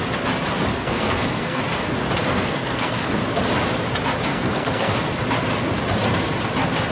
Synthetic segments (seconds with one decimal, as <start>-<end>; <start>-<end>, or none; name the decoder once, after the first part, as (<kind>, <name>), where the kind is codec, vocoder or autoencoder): 0.7-1.6 (codec, SNAC); 2.2-3.2; 4.3-4.9